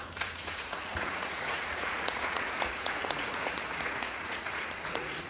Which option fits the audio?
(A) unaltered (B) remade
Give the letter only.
B